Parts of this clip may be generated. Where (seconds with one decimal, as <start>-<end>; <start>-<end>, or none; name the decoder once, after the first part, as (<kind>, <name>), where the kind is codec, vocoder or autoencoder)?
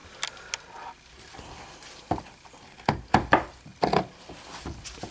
none